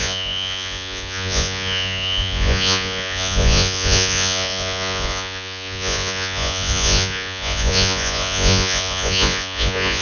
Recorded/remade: remade